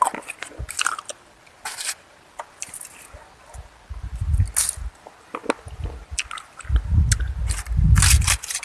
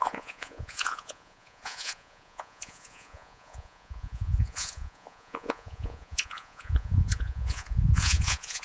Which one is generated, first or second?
second